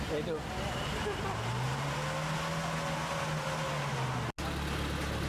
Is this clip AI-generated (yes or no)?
no